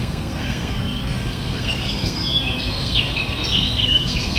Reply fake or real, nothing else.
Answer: fake